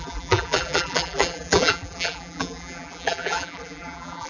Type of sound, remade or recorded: remade